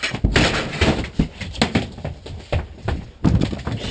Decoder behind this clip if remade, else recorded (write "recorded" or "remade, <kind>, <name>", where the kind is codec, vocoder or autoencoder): recorded